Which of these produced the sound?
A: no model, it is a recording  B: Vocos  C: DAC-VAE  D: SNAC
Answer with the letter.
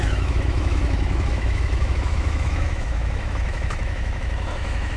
C